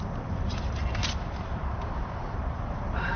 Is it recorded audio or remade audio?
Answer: remade